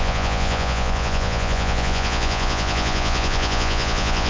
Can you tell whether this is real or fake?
fake